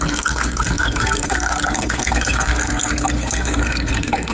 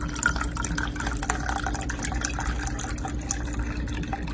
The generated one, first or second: first